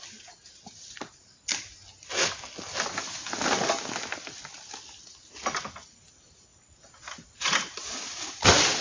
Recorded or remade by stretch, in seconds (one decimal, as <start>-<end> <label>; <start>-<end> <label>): 0.0-8.8 recorded